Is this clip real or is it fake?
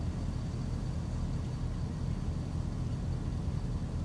real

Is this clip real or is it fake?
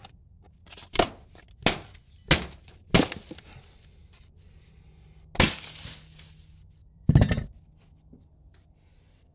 real